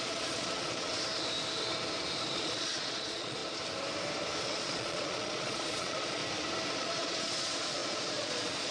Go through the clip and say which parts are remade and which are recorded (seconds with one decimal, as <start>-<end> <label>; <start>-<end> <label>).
0.0-0.9 remade; 0.9-2.3 recorded; 2.3-3.4 remade; 3.4-4.4 recorded; 4.4-6.2 remade; 6.2-6.7 recorded; 6.7-8.7 remade

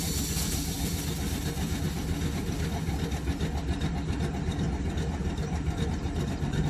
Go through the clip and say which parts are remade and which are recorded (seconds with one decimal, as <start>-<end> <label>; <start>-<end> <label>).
0.0-5.2 recorded; 5.2-5.7 remade; 5.7-6.7 recorded

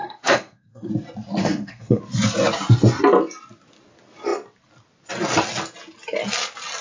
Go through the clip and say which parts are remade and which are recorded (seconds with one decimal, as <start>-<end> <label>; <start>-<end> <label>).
0.0-0.9 remade; 0.9-1.4 recorded; 1.4-2.0 remade; 2.0-6.8 recorded

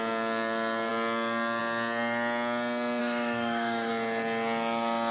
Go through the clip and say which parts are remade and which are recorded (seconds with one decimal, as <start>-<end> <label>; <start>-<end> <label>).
0.0-3.0 recorded; 3.0-3.9 remade; 3.9-5.1 recorded

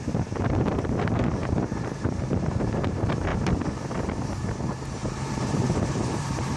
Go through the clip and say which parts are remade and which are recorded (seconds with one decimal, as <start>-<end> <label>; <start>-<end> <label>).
0.0-3.3 remade; 3.3-4.8 recorded; 4.8-6.6 remade

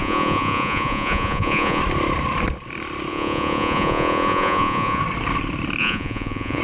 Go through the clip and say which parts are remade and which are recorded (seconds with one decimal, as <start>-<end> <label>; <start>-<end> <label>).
0.0-1.8 remade; 1.8-3.1 recorded; 3.1-5.0 remade; 5.0-5.8 recorded; 5.8-6.6 remade

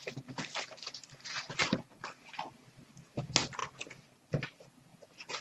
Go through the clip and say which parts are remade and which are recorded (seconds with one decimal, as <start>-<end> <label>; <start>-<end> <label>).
0.0-5.4 recorded

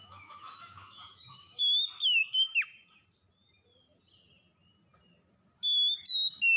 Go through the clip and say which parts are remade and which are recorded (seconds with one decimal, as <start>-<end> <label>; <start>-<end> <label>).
0.0-1.6 remade; 1.6-6.6 recorded